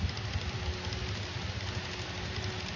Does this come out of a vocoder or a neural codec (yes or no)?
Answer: no